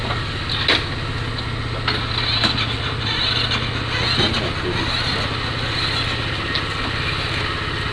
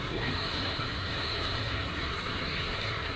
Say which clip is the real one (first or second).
first